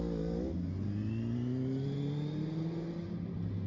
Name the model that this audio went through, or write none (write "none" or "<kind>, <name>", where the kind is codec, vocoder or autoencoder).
none